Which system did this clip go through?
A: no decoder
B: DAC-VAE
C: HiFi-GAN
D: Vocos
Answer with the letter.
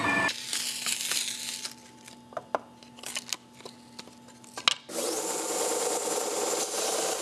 A